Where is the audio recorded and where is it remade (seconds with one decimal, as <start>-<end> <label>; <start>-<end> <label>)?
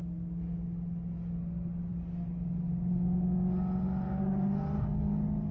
0.0-5.5 recorded